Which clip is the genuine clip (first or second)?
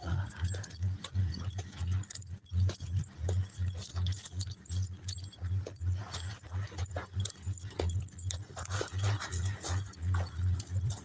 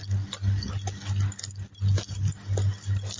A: second